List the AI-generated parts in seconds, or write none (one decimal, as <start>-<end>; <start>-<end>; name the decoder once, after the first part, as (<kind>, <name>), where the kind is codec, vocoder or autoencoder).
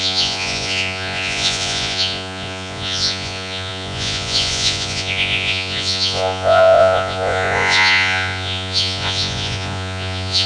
0.0-10.5 (vocoder, Vocos)